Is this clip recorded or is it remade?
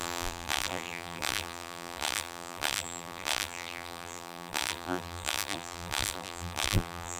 remade